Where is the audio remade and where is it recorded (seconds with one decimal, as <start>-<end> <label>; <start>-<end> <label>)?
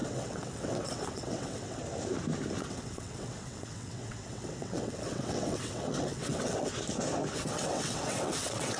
0.0-1.8 remade; 1.8-2.6 recorded; 2.6-6.7 remade; 6.7-7.3 recorded; 7.3-8.8 remade